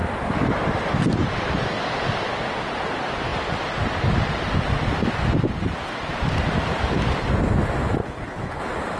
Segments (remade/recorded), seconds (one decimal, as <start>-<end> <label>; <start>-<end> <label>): 0.0-8.0 recorded; 8.0-8.6 remade; 8.6-9.0 recorded